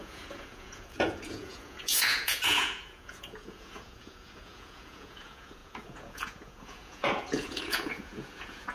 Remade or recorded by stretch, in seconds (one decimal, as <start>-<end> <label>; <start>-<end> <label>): 0.0-8.7 remade